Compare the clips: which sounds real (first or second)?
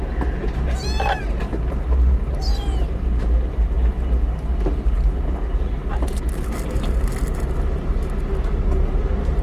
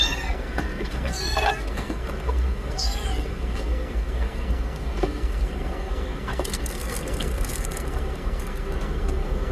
first